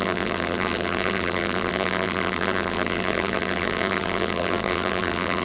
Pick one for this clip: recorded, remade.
remade